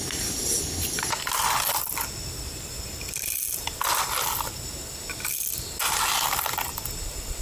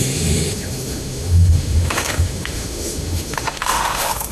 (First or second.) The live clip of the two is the first